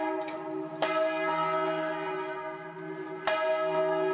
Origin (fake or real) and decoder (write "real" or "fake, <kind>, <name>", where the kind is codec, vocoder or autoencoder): real